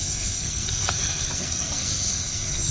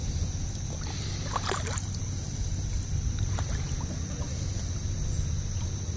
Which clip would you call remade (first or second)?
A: first